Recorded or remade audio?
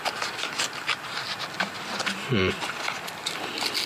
recorded